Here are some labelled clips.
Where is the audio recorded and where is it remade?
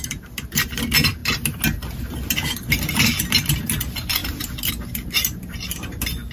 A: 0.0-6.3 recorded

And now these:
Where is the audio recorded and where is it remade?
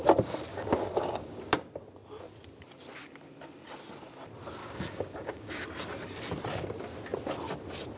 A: 0.0-0.5 recorded; 0.5-1.4 remade; 1.4-4.6 recorded; 4.6-5.5 remade; 5.5-8.0 recorded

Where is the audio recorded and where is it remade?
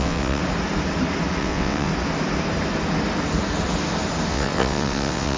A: 0.0-0.4 remade; 0.4-1.4 recorded; 1.4-1.9 remade; 1.9-4.3 recorded; 4.3-5.4 remade